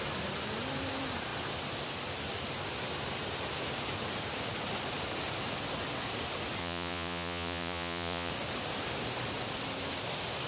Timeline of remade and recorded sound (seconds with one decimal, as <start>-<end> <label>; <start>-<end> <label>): 0.0-6.6 recorded; 6.6-8.3 remade; 8.3-10.5 recorded